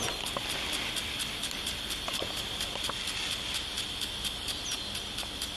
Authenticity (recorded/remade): recorded